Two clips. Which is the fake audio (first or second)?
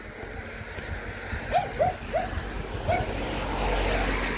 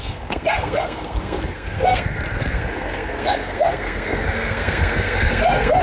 second